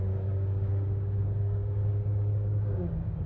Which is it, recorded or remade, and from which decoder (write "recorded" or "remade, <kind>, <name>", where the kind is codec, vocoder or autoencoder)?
remade, codec, DAC